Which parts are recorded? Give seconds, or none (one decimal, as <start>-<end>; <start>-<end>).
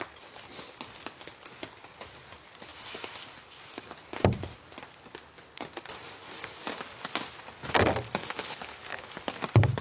0.0-8.2; 9.2-9.8